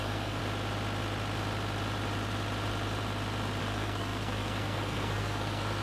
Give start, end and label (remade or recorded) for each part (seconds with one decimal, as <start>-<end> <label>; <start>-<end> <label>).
0.0-0.4 remade; 0.4-3.6 recorded; 3.6-5.8 remade